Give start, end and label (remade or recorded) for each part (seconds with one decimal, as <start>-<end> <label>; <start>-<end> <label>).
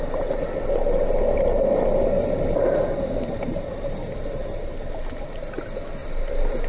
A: 0.0-6.7 recorded